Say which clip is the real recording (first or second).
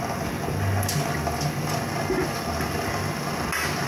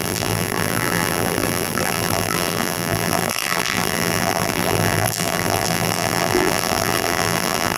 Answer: first